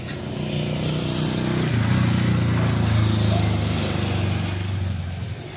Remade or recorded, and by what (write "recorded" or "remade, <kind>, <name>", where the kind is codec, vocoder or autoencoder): recorded